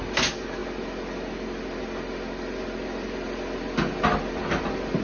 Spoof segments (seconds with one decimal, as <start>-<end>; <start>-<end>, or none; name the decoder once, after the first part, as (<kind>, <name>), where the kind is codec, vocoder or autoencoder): none